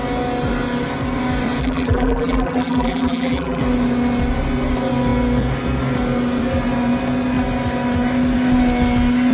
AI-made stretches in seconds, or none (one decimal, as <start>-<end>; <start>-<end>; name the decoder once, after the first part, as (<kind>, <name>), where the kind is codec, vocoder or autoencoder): 1.6-3.6 (vocoder, BigVGAN v2)